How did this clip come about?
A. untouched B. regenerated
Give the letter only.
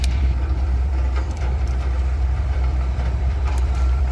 B